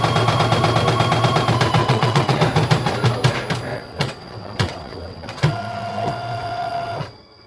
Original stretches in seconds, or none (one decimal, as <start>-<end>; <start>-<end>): 0.0-1.8; 2.4-3.7

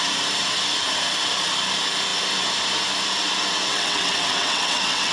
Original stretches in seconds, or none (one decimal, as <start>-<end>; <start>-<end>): 0.0-3.7

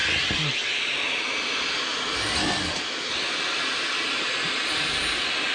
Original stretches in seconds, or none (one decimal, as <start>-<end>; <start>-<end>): 0.0-5.5

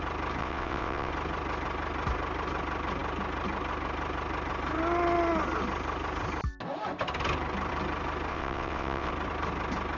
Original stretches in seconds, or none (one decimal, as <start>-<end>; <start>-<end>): 0.0-0.4; 1.1-8.3; 9.1-10.0

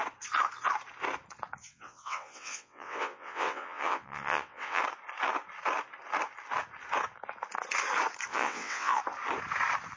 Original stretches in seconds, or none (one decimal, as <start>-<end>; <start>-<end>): 0.0-1.6; 4.8-8.3; 9.0-10.0

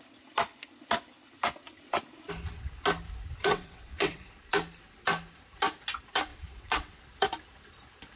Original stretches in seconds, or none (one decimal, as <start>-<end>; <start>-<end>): 0.0-3.4; 4.3-6.3; 6.9-8.2

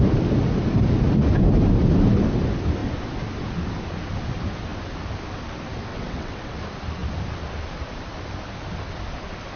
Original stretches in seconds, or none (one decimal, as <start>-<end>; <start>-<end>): 0.0-5.9; 6.6-9.6

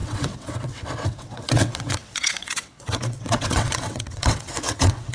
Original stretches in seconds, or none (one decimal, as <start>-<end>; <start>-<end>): none